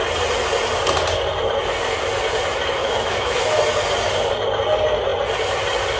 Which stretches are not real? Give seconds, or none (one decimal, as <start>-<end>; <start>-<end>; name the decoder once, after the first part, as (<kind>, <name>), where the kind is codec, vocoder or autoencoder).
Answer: 2.8-3.6 (autoencoder, DAC-VAE)